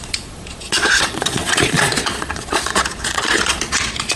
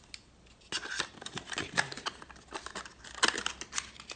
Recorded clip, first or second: second